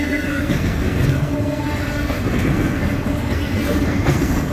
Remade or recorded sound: remade